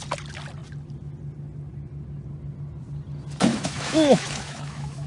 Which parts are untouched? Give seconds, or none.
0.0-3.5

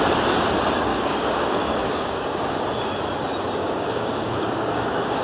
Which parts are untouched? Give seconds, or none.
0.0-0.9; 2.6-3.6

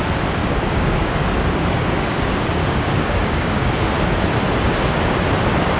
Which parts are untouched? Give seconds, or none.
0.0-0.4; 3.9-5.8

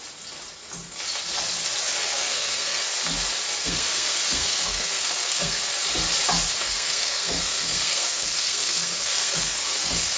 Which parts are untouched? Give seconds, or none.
0.0-2.0; 2.8-3.6; 5.7-6.6